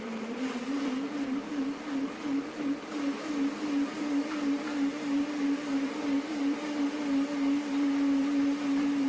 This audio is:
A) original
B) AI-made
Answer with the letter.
B